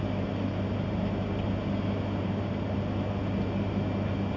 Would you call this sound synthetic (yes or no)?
no